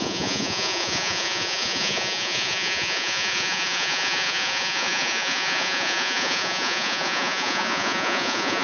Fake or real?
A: fake